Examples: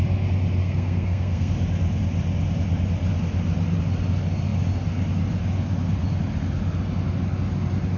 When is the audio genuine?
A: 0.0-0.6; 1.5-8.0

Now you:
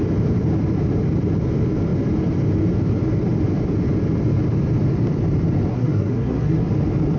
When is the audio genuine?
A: 0.0-5.7; 6.7-7.2

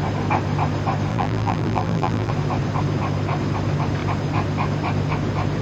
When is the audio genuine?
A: 0.0-1.1; 2.3-5.6

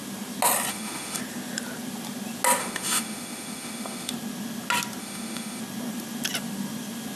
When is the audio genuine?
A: 0.0-0.7; 1.2-2.6; 4.1-5.0; 5.6-7.2

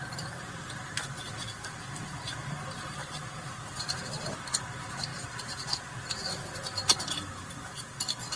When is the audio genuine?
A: 0.0-8.4

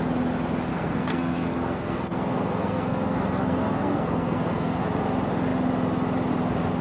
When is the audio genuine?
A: 0.0-0.7; 4.8-6.8